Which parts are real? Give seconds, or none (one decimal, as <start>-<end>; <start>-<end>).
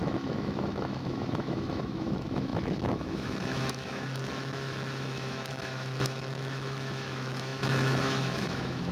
none